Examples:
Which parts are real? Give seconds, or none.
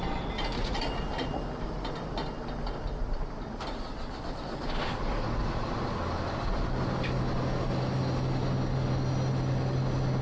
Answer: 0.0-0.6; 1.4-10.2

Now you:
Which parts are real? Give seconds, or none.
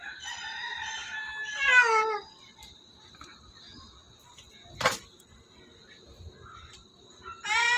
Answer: 0.0-7.8